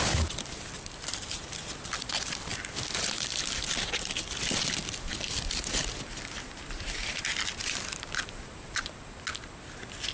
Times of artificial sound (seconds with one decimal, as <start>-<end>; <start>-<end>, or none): none